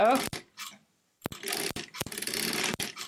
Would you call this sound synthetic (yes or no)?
yes